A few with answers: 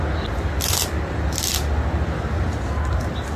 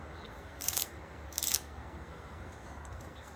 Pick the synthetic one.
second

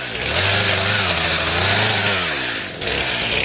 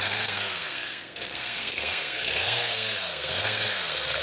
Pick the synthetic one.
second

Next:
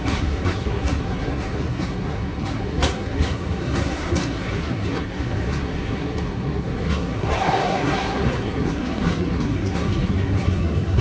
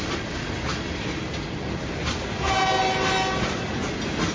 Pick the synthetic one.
first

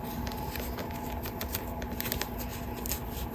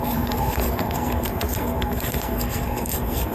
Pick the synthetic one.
second